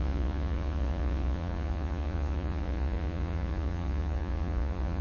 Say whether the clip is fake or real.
fake